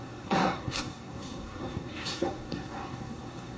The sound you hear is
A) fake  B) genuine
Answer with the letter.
A